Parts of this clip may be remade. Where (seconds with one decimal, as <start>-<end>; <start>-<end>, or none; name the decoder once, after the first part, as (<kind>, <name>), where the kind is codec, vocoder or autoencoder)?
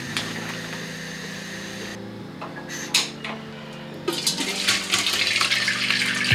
none